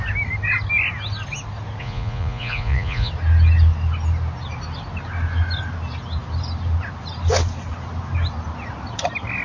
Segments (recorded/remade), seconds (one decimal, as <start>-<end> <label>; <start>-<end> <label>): 0.0-1.8 recorded; 1.8-3.1 remade; 3.1-9.4 recorded